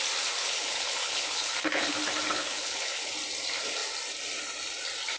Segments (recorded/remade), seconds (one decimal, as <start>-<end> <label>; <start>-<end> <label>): 0.0-0.4 recorded; 0.4-1.9 remade; 1.9-2.3 recorded; 2.3-3.1 remade; 3.1-5.2 recorded